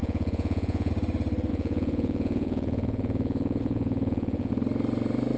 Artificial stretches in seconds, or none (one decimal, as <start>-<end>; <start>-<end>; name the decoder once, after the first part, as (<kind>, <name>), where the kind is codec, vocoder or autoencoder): 0.0-0.9 (vocoder, Vocos); 1.5-4.5